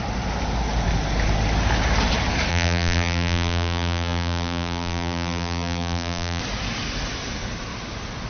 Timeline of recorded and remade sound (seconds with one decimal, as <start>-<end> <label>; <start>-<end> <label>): 0.0-2.5 recorded; 2.5-6.4 remade; 6.4-8.3 recorded